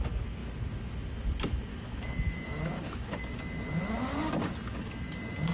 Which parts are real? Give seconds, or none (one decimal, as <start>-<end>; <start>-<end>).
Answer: 0.0-1.7; 3.2-5.5